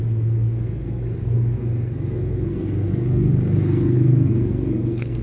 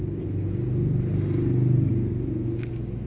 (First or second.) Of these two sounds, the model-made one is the first